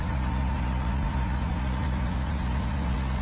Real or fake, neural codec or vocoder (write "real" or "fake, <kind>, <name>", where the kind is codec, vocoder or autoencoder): fake, vocoder, Vocos